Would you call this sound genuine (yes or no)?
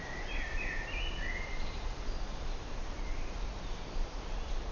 yes